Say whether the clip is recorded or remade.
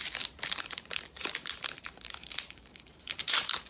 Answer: remade